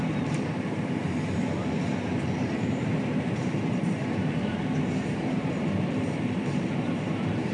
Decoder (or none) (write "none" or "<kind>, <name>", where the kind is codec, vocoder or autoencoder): vocoder, BigVGAN v2